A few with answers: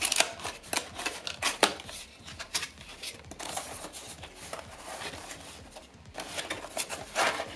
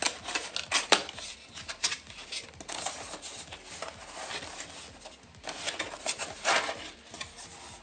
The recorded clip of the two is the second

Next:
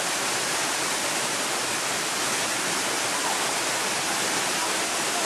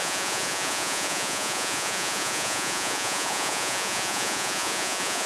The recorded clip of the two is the first